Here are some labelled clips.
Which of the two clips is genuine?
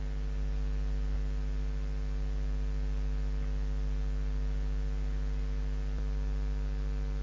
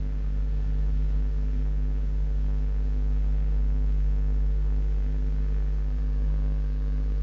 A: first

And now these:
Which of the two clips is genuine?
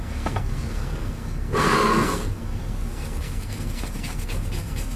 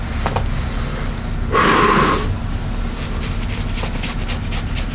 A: second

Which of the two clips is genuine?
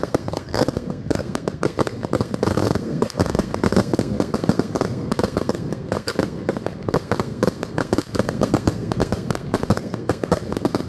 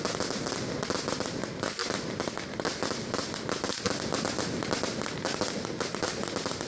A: second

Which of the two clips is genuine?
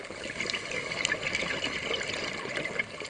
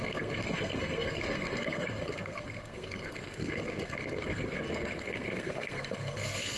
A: first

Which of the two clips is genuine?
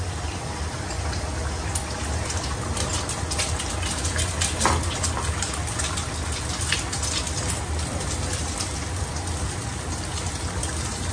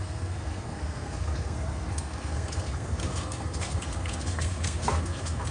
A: first